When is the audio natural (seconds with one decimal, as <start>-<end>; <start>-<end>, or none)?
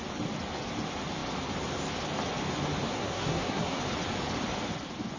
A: 0.0-2.9; 3.8-5.2